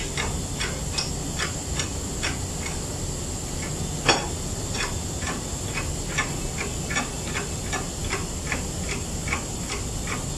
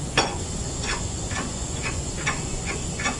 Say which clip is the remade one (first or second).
second